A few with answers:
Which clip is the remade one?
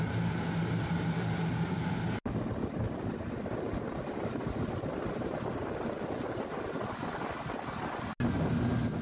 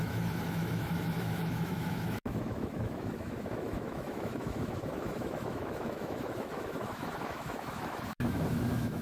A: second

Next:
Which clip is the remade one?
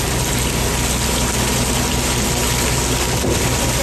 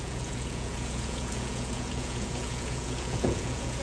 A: second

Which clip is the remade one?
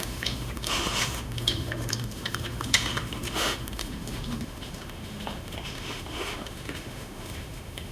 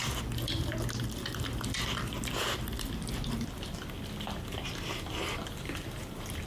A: first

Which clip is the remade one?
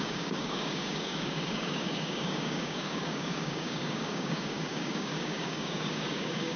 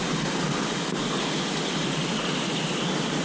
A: first